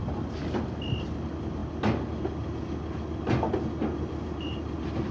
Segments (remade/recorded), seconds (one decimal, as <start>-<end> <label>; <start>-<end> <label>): 0.0-5.1 recorded